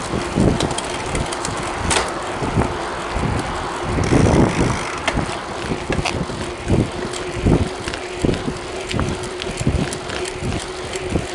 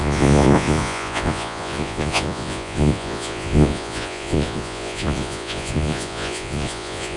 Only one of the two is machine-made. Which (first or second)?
second